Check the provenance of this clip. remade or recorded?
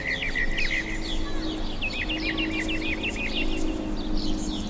recorded